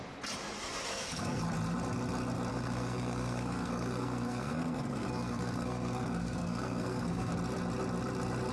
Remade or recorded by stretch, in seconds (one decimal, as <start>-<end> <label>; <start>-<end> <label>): 0.0-0.9 recorded; 0.9-1.4 remade; 1.4-2.5 recorded; 2.5-7.3 remade; 7.3-8.5 recorded